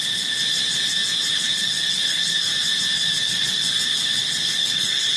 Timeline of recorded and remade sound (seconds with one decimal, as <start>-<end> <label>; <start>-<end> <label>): 0.0-0.4 remade; 0.4-1.3 recorded; 1.3-2.5 remade; 2.5-3.2 recorded; 3.2-5.2 remade

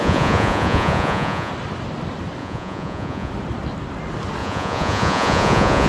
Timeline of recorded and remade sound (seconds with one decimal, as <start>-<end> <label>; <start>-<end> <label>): 0.0-1.5 remade; 1.5-2.4 recorded; 2.4-3.3 remade; 3.3-4.4 recorded; 4.4-5.9 remade

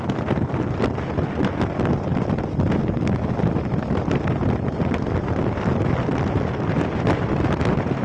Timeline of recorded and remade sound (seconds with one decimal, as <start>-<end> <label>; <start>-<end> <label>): 0.0-8.0 recorded

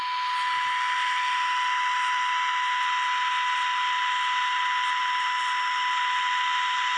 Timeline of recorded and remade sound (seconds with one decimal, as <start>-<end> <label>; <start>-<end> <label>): 0.0-7.0 recorded

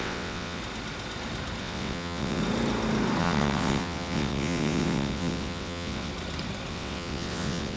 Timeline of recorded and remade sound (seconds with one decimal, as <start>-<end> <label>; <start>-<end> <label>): 0.0-0.6 remade; 0.6-1.6 recorded; 1.6-2.4 remade; 2.4-3.2 recorded; 3.2-6.1 remade; 6.1-6.7 recorded; 6.7-7.8 remade

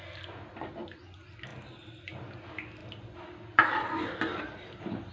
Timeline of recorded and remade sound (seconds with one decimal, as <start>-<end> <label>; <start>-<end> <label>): 0.0-5.1 recorded